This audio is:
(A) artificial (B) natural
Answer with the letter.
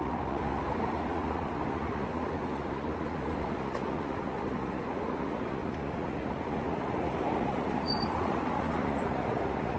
A